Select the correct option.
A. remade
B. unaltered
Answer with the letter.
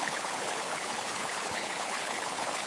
A